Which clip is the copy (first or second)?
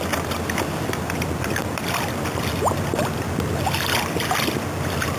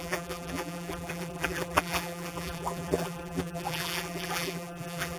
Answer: second